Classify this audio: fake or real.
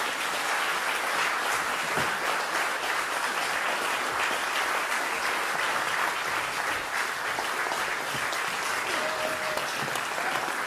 real